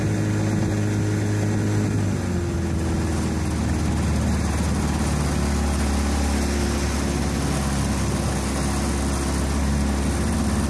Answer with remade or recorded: recorded